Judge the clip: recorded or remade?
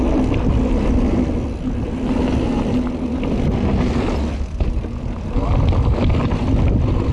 recorded